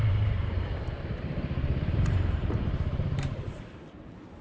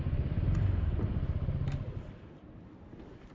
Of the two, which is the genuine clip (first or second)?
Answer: second